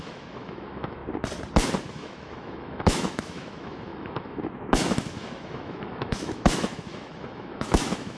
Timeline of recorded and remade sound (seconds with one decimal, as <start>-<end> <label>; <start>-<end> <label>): 0.0-1.0 remade; 1.0-1.8 recorded; 1.8-8.2 remade